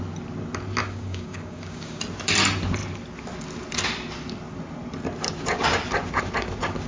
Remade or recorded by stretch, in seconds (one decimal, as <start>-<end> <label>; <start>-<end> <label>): 0.0-0.8 recorded; 0.8-2.0 remade; 2.0-6.9 recorded